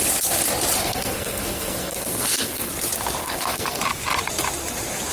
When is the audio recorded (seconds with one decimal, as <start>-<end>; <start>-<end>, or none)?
0.0-0.8; 2.7-3.2; 3.8-5.1